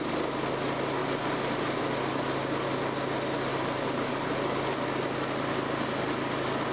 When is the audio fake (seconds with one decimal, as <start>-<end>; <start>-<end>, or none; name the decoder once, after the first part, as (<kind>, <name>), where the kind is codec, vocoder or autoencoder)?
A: 1.0-1.8 (vocoder, BigVGAN v2); 3.5-4.6